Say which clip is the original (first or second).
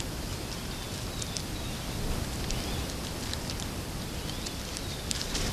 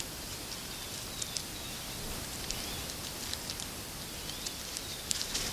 second